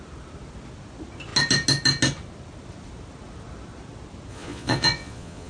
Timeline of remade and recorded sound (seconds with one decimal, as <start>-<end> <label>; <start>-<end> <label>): 0.0-4.3 recorded; 4.3-5.5 remade